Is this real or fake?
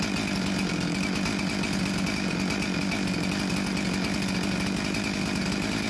real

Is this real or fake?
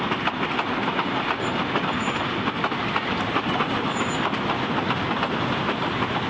real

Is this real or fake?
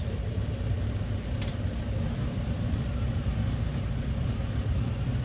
real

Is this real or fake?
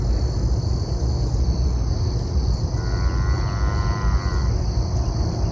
real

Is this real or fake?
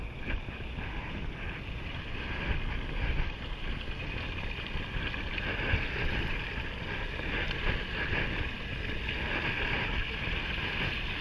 real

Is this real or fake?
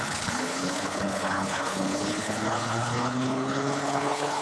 fake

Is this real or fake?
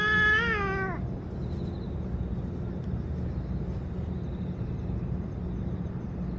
real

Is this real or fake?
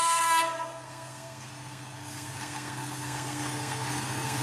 fake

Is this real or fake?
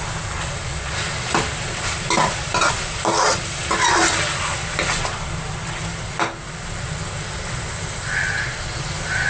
real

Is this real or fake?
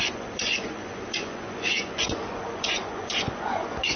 fake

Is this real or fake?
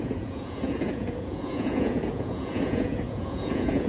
fake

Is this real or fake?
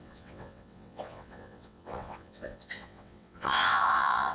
fake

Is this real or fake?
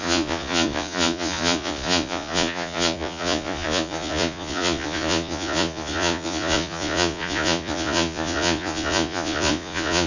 fake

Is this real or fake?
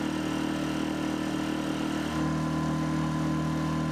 real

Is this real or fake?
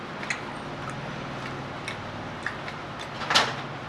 real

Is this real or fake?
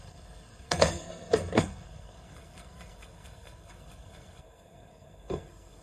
fake